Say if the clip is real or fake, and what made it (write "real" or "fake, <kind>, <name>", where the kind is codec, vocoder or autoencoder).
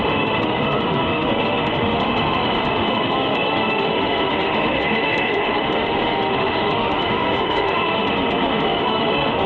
fake, autoencoder, DAC-VAE